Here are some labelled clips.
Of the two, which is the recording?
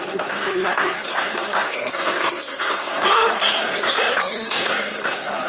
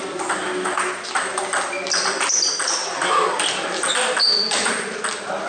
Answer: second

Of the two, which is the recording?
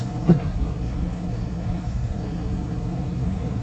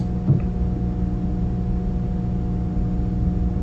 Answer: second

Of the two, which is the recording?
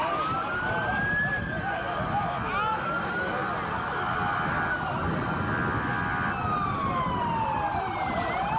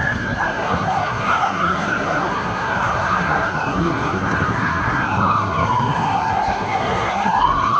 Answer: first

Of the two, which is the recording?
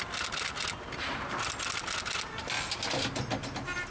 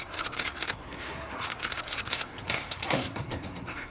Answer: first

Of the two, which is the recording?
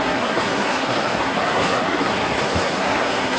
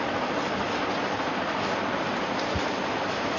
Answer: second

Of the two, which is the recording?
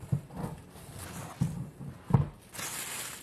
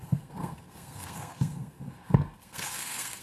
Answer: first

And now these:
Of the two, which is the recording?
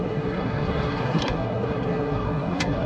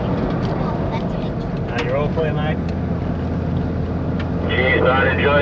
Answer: second